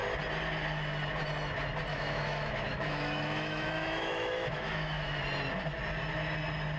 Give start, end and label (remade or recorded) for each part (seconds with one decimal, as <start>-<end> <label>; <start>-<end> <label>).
0.0-1.9 recorded; 1.9-5.2 remade; 5.2-6.8 recorded